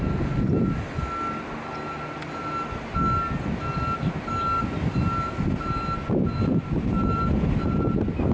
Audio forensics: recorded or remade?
recorded